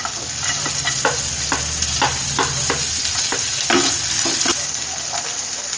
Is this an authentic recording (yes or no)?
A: yes